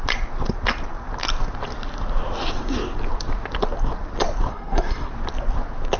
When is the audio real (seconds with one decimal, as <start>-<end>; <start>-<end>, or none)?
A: 0.0-4.5; 5.1-6.0